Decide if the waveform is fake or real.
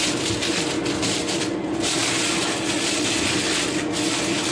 real